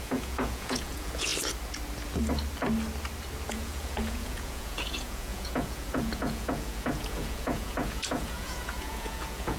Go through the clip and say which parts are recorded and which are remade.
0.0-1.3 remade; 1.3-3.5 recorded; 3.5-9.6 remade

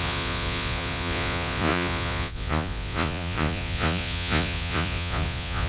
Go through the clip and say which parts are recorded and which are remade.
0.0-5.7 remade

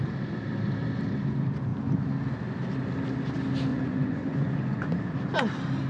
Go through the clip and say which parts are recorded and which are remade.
0.0-3.7 recorded; 3.7-5.0 remade; 5.0-5.9 recorded

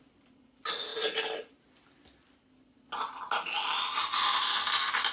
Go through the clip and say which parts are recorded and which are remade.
0.0-5.1 recorded